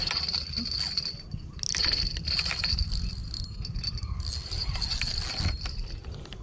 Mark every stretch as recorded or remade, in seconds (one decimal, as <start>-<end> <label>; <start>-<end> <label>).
0.0-6.4 recorded